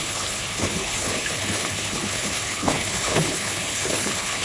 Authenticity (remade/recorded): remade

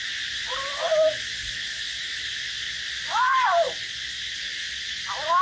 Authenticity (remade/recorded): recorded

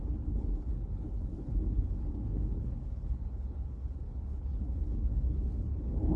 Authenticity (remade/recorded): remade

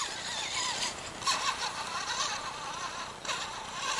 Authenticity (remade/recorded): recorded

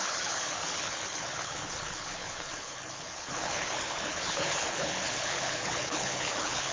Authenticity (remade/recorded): remade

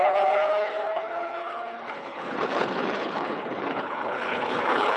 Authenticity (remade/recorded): remade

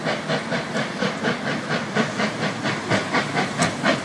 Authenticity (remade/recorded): recorded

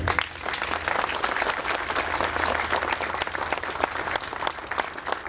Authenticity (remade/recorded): recorded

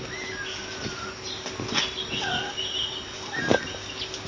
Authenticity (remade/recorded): recorded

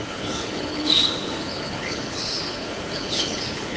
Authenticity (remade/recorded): remade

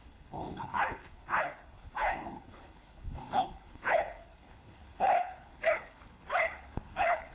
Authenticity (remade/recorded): remade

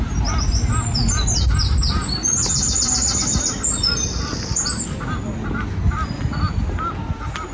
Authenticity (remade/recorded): recorded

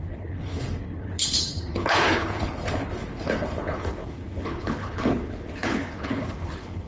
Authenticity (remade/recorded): remade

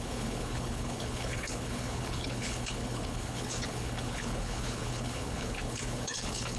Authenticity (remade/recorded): remade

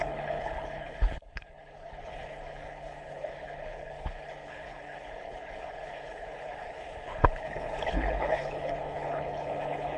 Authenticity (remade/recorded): remade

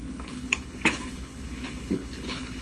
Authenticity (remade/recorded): remade